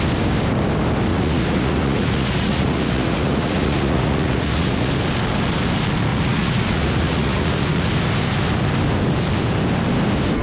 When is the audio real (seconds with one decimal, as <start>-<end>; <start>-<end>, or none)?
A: 0.0-1.1; 4.9-6.1; 7.9-10.4